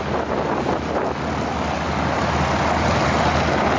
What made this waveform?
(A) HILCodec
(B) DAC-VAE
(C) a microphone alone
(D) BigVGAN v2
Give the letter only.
C